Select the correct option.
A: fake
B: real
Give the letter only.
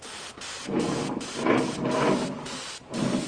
B